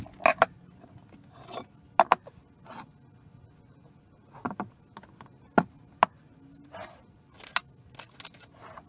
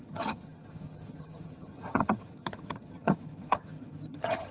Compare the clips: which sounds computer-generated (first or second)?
second